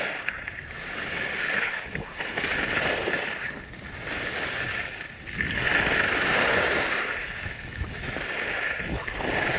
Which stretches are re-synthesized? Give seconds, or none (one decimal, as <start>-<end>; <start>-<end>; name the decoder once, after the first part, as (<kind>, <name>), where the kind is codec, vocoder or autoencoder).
7.2-8.0 (autoencoder, DAC-VAE)